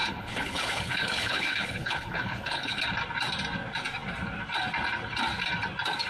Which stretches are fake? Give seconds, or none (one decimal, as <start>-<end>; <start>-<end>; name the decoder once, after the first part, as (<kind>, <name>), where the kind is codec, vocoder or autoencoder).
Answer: 0.0-2.8 (codec, HILCodec)